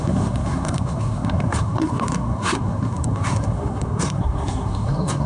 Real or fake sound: fake